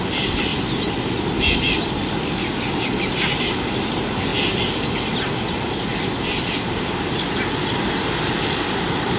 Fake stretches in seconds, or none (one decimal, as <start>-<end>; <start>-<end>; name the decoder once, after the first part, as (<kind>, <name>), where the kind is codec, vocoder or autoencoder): 2.4-2.9 (codec, DAC)